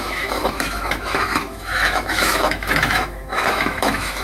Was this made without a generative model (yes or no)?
no